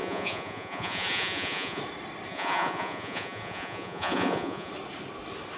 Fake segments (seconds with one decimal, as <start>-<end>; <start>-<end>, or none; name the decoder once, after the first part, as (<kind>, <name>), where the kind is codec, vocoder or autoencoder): 0.0-1.8 (vocoder, Vocos); 2.3-4.7